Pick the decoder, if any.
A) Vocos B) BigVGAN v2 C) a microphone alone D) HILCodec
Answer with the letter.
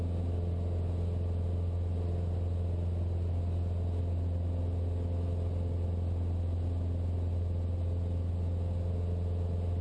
C